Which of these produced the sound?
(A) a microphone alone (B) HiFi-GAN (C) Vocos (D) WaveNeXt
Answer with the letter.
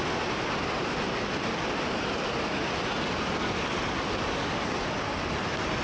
A